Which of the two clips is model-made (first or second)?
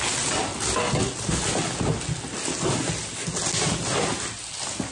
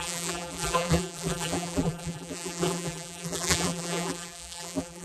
second